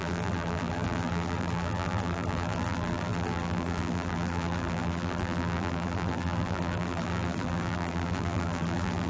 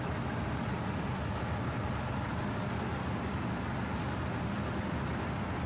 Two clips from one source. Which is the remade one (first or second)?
first